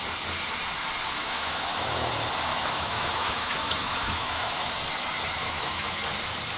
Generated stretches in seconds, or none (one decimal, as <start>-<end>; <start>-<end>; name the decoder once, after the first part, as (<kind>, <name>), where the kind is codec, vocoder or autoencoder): 1.2-2.1 (autoencoder, DAC-VAE); 2.5-4.7; 5.4-6.0